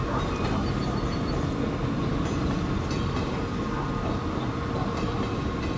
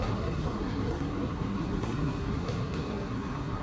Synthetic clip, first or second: second